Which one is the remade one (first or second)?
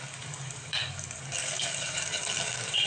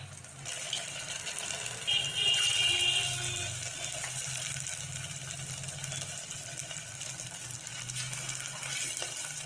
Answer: first